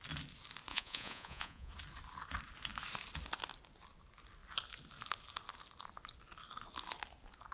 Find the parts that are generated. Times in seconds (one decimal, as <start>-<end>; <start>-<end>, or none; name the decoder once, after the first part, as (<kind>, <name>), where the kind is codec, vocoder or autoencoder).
0.7-1.7 (vocoder, Vocos)